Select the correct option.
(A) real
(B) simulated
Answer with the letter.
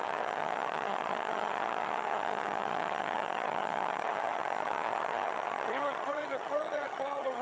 B